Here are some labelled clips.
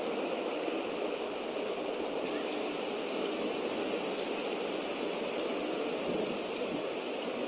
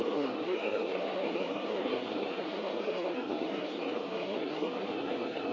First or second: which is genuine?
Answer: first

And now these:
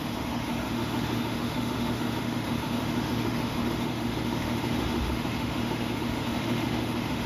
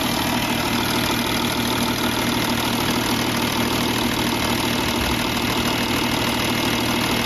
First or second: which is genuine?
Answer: second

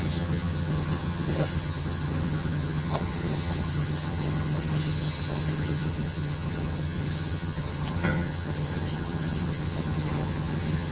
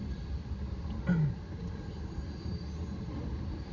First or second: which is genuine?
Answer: second